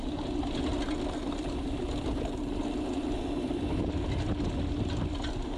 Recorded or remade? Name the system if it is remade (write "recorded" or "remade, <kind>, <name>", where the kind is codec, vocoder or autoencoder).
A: recorded